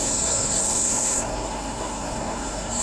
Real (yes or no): no